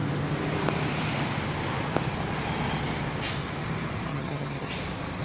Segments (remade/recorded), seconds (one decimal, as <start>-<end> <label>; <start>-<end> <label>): 0.0-4.1 recorded; 4.1-4.7 remade; 4.7-5.2 recorded